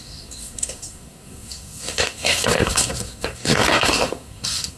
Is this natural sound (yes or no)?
no